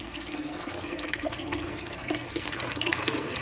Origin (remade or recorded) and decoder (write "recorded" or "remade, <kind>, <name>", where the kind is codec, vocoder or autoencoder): remade, codec, SNAC